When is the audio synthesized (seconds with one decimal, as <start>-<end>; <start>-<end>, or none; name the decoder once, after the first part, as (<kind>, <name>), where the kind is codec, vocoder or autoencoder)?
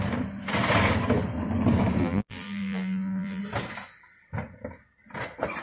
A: 2.0-3.4 (vocoder, BigVGAN v2)